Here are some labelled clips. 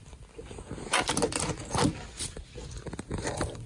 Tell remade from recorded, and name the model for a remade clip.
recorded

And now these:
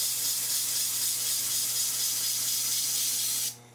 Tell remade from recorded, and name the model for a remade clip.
recorded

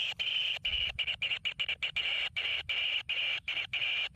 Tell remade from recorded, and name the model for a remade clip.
recorded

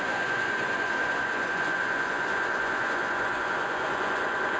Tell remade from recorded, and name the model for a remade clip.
remade, vocoder, Vocos